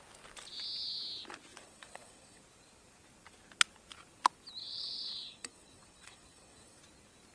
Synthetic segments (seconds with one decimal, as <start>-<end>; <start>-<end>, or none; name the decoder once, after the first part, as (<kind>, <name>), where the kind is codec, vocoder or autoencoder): 1.5-2.4 (vocoder, WaveNeXt); 4.6-6.8